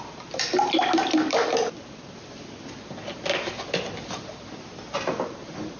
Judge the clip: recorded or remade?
recorded